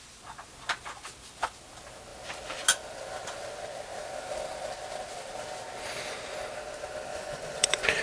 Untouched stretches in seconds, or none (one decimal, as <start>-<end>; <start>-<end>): 0.0-7.1